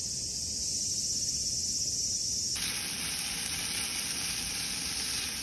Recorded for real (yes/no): yes